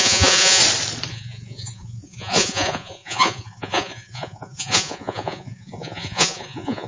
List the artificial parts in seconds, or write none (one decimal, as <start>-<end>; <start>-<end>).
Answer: 0.0-0.6; 1.1-6.9